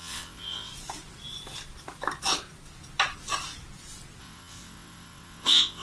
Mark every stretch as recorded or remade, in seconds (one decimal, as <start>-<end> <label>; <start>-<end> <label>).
0.0-0.7 remade; 0.7-4.2 recorded; 4.2-5.8 remade